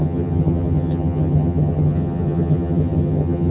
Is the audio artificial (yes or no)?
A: yes